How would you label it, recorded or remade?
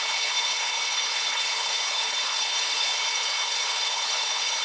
remade